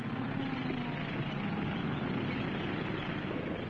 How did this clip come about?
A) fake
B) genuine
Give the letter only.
B